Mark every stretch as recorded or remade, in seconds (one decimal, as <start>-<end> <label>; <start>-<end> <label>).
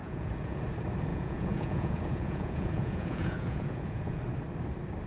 0.0-0.6 remade; 0.6-1.1 recorded; 1.1-4.2 remade; 4.2-5.1 recorded